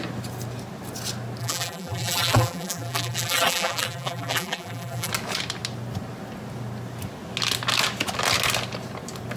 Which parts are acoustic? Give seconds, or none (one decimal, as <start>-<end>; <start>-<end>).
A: 0.0-1.4; 5.1-9.4